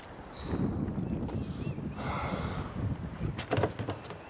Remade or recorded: recorded